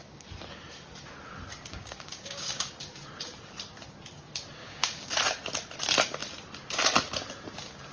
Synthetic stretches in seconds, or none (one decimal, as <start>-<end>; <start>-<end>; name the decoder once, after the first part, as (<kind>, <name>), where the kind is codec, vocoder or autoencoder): 1.7-2.7 (codec, DAC); 4.6-5.1

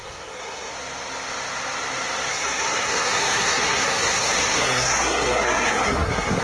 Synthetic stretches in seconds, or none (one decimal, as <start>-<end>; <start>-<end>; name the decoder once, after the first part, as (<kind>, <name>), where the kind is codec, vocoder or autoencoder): 0.0-0.7 (codec, SNAC); 2.3-6.4

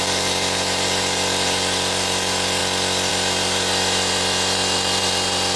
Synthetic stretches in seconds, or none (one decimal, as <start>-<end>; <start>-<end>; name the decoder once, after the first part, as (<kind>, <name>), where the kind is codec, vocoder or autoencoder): 0.0-2.6 (vocoder, BigVGAN v2); 3.1-5.6

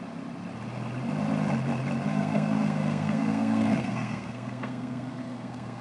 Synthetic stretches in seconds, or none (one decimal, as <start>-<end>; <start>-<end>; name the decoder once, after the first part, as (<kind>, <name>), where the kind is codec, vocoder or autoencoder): 2.1-5.8 (codec, SNAC)

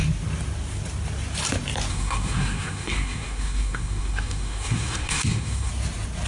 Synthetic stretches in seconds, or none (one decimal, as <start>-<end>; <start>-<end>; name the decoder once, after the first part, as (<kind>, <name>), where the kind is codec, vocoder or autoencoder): 1.9-5.7 (codec, SNAC)

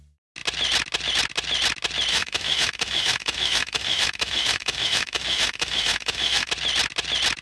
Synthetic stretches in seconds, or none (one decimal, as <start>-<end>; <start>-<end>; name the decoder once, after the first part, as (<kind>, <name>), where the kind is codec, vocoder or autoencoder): 2.1-6.5 (autoencoder, DAC-VAE)